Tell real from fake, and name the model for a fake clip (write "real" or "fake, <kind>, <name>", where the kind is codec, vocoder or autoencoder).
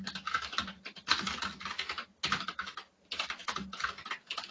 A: real